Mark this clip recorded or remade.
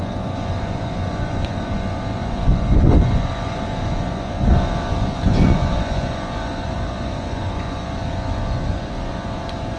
remade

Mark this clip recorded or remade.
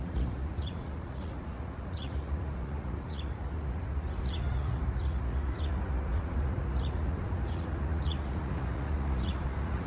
remade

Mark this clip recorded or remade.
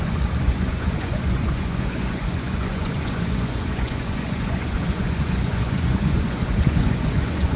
remade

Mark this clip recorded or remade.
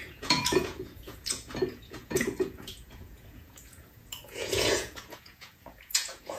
remade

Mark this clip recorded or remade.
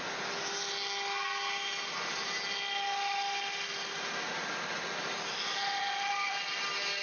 recorded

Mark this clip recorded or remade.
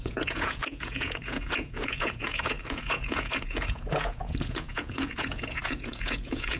remade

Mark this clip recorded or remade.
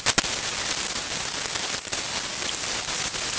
recorded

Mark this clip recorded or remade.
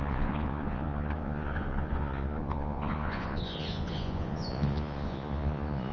remade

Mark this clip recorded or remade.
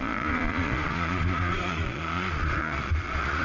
remade